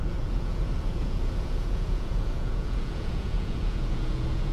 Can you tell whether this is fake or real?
fake